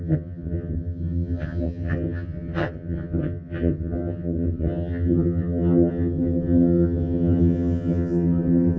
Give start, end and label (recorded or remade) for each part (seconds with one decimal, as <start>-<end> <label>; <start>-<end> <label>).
0.0-8.8 remade